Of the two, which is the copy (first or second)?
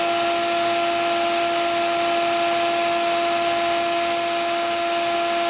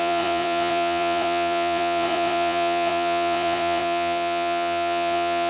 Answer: second